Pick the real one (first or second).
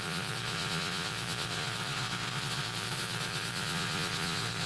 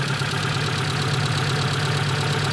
second